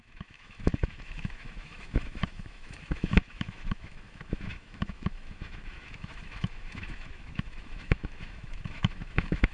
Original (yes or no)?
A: no